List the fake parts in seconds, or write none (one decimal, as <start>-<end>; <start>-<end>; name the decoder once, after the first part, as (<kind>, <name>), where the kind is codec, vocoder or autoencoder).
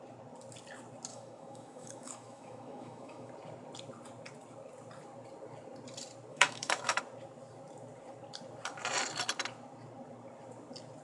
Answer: 1.1-3.3 (autoencoder, DAC-VAE); 6.3-7.0